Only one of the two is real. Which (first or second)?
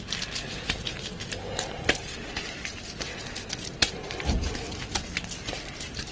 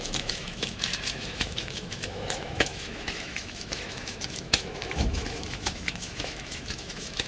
first